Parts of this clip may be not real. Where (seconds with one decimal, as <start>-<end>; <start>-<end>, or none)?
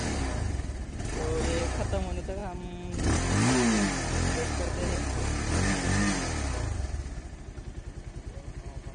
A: none